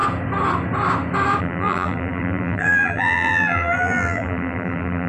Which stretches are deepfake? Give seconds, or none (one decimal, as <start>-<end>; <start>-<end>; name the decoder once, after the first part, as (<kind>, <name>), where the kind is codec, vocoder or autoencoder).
1.4-5.1 (vocoder, BigVGAN v2)